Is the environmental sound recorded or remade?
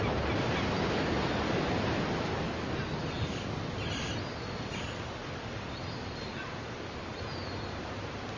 recorded